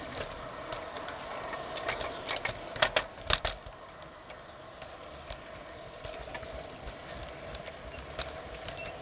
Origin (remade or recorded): recorded